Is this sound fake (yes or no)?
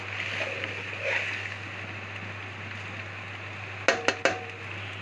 no